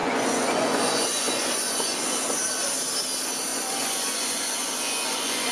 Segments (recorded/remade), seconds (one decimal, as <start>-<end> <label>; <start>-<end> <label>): 0.0-2.5 remade; 2.5-3.5 recorded; 3.5-5.5 remade